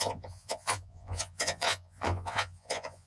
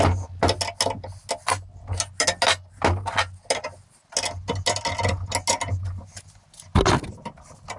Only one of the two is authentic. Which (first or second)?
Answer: second